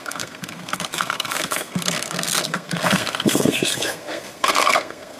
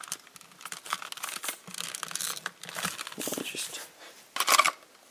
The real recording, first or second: second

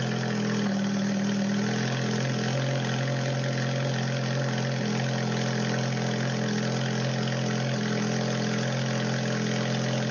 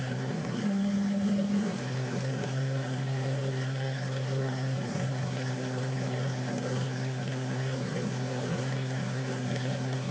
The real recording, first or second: first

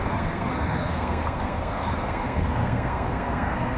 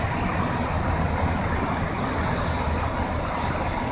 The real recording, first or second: second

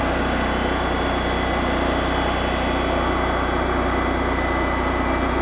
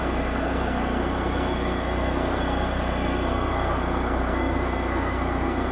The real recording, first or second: first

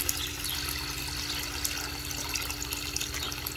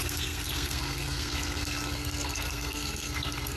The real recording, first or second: first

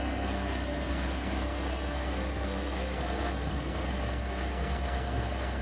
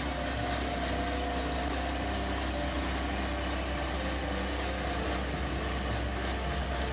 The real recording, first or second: second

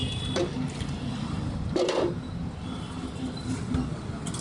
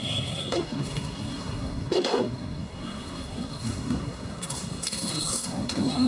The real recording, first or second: first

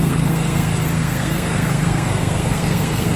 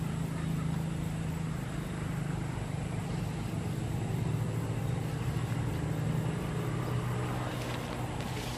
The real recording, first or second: second